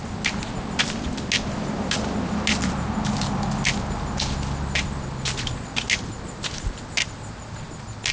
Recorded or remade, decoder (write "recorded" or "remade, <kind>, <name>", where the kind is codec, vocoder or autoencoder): recorded